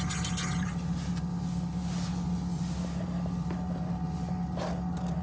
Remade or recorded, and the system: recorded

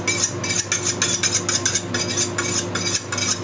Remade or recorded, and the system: recorded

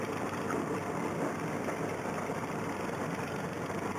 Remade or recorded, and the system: recorded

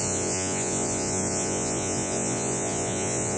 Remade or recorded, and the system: remade, vocoder, Vocos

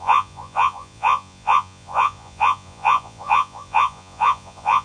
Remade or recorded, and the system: remade, vocoder, Vocos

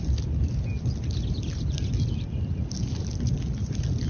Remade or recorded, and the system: recorded